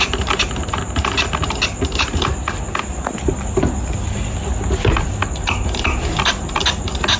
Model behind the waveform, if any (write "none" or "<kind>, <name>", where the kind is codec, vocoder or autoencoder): none